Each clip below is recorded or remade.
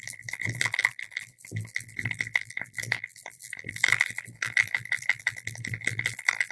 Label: remade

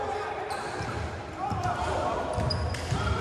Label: recorded